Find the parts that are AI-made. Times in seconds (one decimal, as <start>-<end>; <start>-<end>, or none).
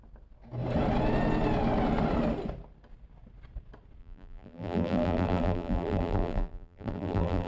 4.0-7.5